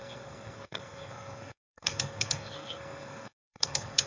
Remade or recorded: remade